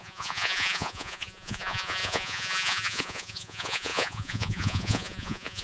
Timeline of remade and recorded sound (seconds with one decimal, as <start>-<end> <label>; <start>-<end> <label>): 0.0-5.6 remade